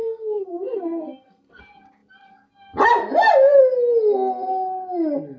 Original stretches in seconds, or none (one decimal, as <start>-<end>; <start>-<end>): 1.6-5.4